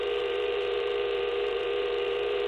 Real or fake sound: fake